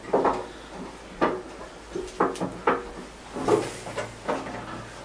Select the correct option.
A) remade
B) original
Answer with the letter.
B